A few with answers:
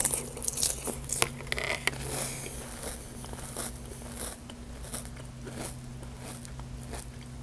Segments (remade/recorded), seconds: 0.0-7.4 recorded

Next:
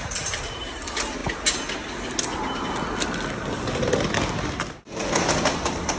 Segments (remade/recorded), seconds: 0.0-1.2 remade; 1.2-4.7 recorded; 4.7-6.0 remade

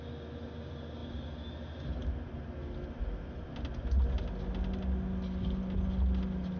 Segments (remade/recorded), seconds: 0.0-6.6 recorded

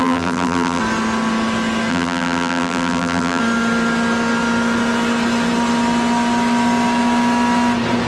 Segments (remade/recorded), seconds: 0.0-0.8 remade; 0.8-1.9 recorded; 1.9-3.4 remade; 3.4-8.1 recorded

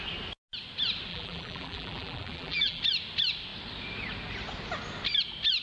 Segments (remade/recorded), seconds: 0.0-1.1 recorded; 1.1-2.8 remade; 2.8-5.6 recorded